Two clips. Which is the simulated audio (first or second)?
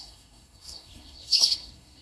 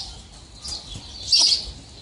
first